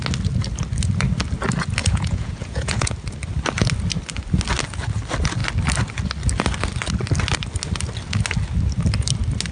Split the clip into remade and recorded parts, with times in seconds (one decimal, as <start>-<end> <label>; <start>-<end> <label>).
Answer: 0.0-1.8 recorded; 1.8-2.9 remade; 2.9-9.5 recorded